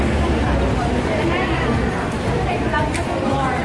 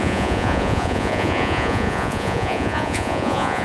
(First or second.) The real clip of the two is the first